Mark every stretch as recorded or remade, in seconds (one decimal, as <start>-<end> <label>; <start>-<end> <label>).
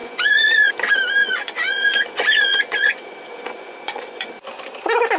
0.0-0.7 remade; 0.7-1.2 recorded; 1.2-4.3 remade; 4.3-5.2 recorded